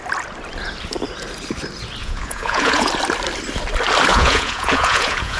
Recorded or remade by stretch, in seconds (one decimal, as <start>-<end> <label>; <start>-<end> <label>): 0.0-2.0 recorded; 2.0-2.9 remade; 2.9-4.1 recorded; 4.1-5.4 remade